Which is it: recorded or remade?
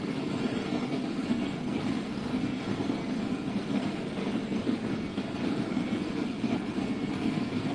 remade